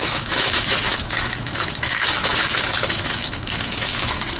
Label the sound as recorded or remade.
remade